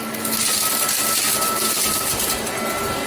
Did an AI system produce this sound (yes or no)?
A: no